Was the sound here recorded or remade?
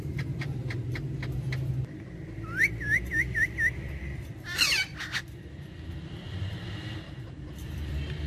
remade